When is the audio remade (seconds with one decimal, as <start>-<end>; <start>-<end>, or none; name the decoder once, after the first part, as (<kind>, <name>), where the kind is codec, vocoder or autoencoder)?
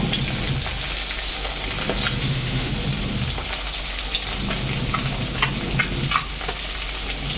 2.2-2.7 (autoencoder, DAC-VAE)